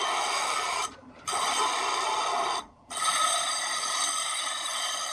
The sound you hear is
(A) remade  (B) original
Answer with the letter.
B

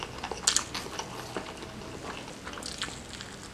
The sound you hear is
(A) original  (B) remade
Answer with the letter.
A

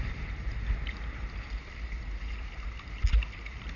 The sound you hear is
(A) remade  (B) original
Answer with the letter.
B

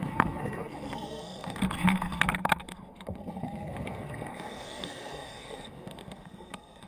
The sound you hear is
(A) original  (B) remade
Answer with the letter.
B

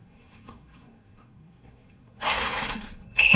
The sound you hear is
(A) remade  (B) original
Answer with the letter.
A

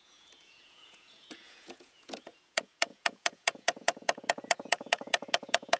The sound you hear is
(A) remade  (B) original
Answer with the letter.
A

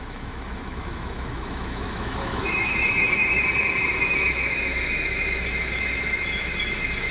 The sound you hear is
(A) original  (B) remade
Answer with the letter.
B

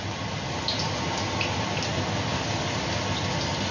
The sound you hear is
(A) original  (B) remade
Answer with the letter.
A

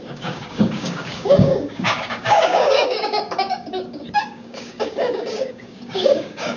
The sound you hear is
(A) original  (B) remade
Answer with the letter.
B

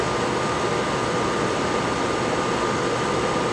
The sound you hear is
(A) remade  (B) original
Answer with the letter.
B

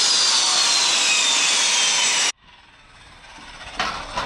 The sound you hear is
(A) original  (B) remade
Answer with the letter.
A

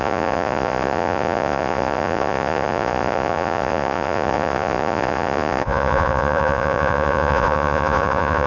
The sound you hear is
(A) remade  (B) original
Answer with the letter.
A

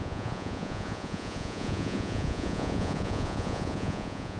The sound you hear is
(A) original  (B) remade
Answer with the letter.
B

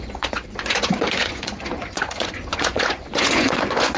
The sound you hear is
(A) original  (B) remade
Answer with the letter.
B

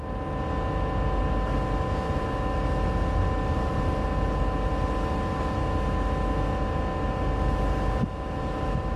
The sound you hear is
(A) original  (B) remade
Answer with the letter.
A